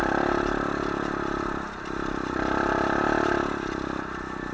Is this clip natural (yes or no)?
yes